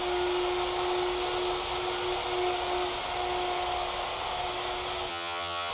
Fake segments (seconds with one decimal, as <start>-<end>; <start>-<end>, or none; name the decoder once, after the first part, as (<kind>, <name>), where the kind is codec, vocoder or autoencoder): 5.1-5.7 (vocoder, HiFi-GAN)